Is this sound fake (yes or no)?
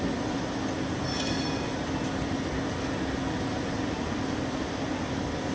no